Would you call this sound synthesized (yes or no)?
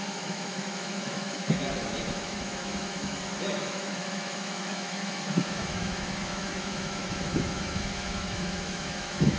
yes